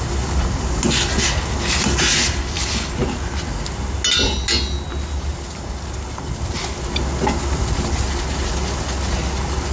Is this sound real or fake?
real